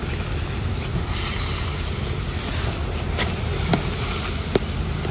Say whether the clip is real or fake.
real